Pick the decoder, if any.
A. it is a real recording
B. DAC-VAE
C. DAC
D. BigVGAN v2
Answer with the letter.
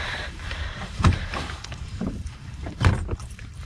D